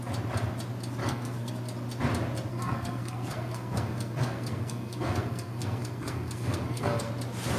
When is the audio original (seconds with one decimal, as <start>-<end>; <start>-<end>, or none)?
0.0-1.0; 1.5-2.5; 7.1-7.6